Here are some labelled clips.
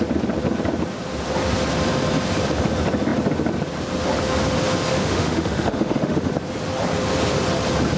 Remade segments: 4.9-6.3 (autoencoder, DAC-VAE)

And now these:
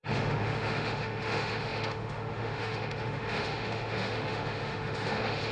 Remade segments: 0.0-5.5 (autoencoder, DAC-VAE)

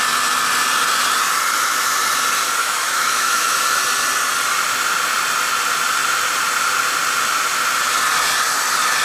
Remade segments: 2.6-3.6 (autoencoder, DAC-VAE)